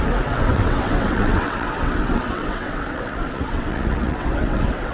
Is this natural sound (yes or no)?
no